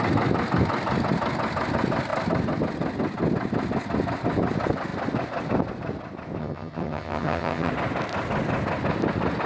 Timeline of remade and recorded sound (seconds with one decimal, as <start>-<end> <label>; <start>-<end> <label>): 0.0-6.4 recorded; 6.4-7.7 remade; 7.7-9.5 recorded